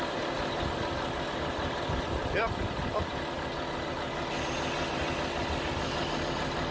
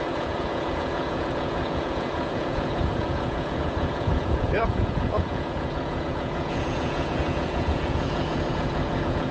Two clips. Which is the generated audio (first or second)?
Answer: second